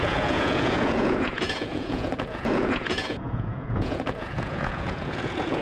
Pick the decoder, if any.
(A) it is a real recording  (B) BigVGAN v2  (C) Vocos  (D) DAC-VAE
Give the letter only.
C